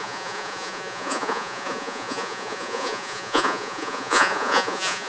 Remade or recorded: remade